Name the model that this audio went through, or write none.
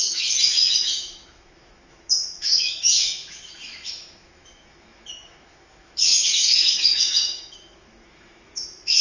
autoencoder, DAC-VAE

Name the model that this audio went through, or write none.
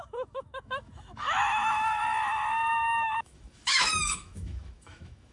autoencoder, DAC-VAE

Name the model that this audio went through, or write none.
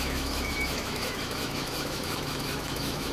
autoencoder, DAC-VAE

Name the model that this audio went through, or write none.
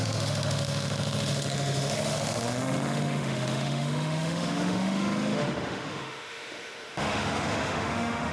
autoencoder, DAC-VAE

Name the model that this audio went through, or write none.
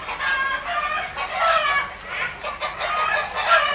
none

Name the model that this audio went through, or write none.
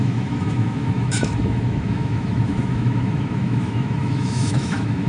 autoencoder, DAC-VAE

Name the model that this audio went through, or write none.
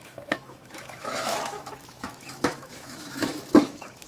autoencoder, DAC-VAE